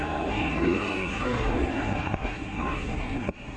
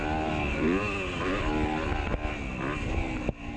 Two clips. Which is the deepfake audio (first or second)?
first